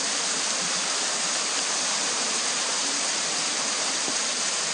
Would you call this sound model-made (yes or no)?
yes